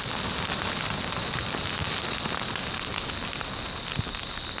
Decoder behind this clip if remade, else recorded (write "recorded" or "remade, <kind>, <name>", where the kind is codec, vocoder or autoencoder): recorded